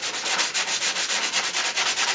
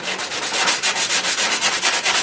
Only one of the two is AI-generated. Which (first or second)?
first